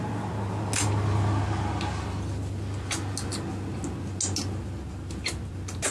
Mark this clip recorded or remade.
recorded